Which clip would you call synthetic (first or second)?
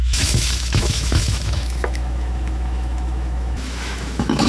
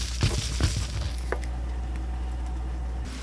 first